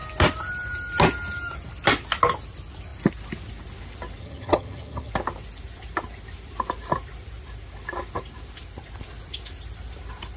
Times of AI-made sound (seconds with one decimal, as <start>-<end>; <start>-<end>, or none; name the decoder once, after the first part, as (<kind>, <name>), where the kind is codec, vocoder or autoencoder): 4.2-5.1 (vocoder, HiFi-GAN)